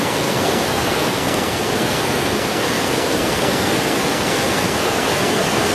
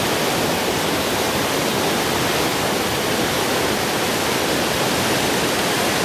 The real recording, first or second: second